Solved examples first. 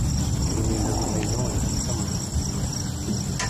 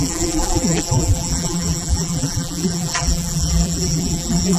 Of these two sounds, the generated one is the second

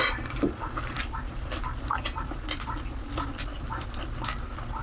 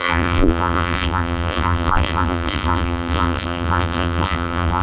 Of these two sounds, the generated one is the second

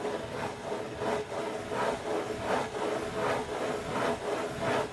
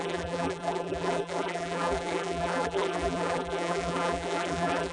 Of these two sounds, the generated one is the second